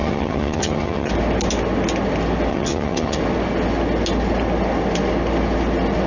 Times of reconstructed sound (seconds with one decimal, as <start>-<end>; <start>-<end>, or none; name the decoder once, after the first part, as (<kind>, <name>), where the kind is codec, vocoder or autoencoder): 0.0-1.1 (vocoder, HiFi-GAN); 2.5-3.2